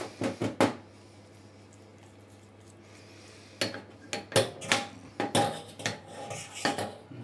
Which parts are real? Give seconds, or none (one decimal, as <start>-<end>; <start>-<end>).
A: 0.0-7.2